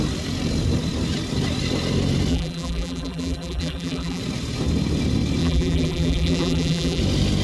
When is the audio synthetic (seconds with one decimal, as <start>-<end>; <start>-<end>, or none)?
2.3-4.2; 5.4-7.0